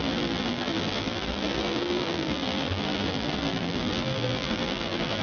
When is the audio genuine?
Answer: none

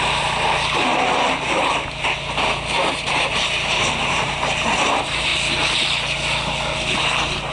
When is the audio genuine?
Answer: 0.9-2.2; 5.3-7.0

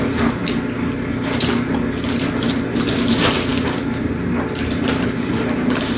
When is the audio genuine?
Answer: 0.4-3.1

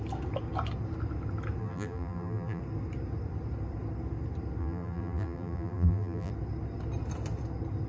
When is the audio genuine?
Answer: 0.0-1.6; 2.6-4.6; 6.3-7.9

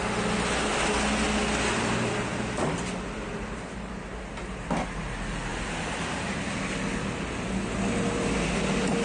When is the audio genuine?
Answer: 0.0-9.0

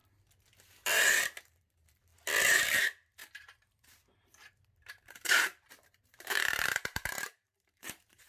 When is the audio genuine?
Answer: 0.0-1.4; 2.1-2.6